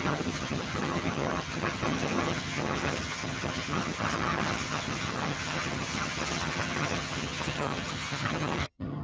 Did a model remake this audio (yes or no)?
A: yes